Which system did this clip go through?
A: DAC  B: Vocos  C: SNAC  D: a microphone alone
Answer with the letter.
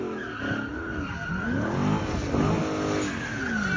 D